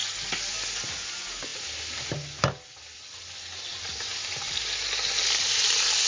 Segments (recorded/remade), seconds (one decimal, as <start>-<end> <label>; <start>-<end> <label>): 0.0-6.1 recorded